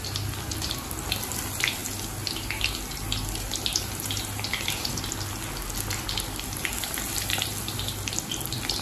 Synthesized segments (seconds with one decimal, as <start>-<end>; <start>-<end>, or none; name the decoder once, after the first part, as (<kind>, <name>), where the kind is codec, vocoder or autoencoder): 3.7-4.9 (vocoder, BigVGAN v2)